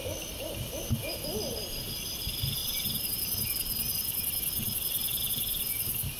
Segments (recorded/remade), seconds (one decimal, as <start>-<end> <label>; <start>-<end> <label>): 0.0-6.2 recorded